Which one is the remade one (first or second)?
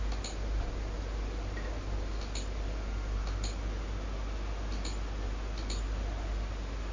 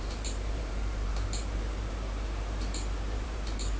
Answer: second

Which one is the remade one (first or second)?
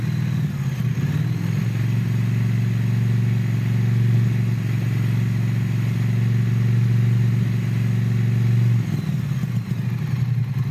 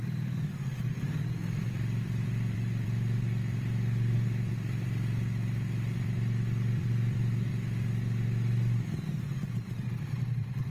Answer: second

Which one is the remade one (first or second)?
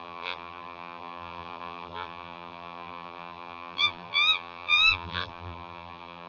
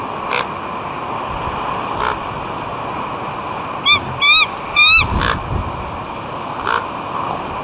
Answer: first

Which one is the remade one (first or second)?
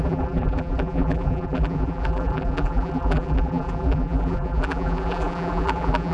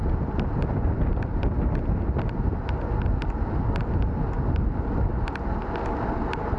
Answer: first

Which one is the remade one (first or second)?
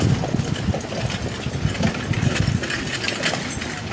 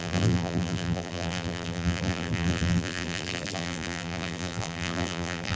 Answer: second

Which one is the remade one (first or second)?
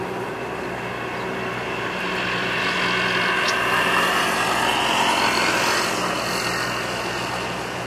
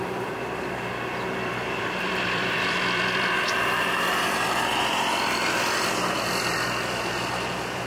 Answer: second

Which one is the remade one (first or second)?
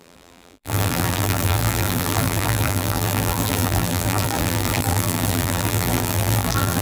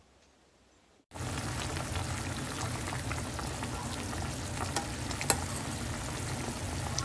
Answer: first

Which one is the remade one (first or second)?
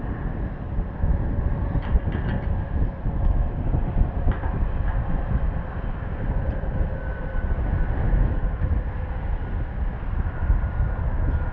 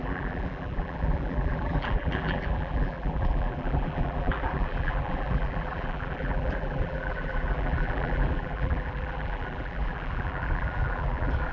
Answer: second